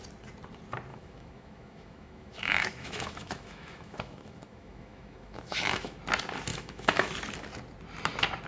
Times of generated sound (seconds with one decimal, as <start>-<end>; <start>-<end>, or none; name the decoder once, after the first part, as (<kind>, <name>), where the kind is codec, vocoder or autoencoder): 0.9-6.0 (autoencoder, DAC-VAE); 6.5-7.1